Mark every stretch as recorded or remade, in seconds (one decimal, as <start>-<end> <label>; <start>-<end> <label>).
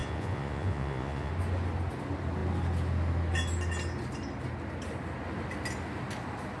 0.0-1.3 remade; 1.3-6.6 recorded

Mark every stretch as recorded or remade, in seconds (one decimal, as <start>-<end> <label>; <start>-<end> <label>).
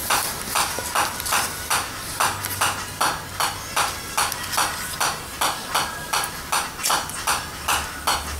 0.0-8.4 recorded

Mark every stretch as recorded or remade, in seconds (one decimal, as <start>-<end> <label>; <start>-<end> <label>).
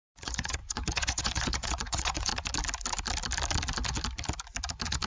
0.0-2.3 remade; 2.3-5.1 recorded